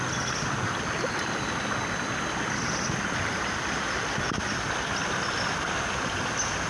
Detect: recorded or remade recorded